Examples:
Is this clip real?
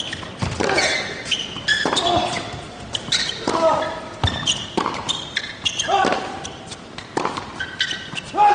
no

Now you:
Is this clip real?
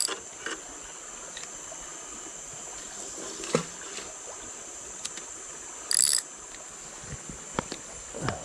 yes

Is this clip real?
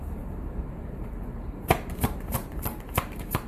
no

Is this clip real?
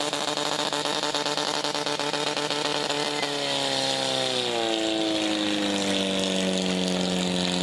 yes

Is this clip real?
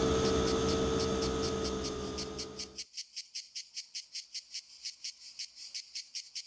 yes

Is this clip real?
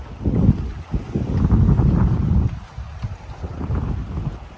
yes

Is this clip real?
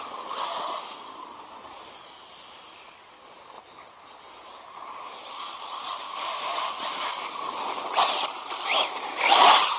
yes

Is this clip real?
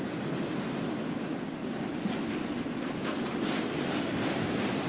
yes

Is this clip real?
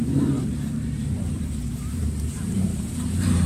no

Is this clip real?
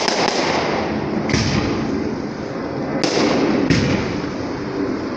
yes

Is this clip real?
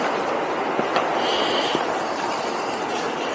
yes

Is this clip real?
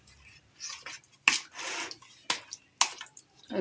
yes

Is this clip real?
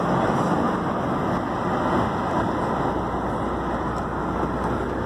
yes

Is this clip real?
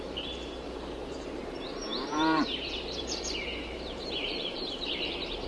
no